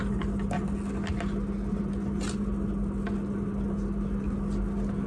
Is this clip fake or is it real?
real